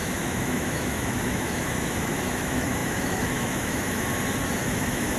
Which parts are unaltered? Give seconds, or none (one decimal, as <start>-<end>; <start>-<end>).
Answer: 4.1-4.6